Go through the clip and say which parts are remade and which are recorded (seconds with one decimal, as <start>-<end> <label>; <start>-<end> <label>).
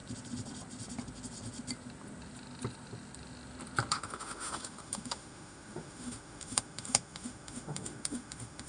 0.0-3.9 recorded; 3.9-8.7 remade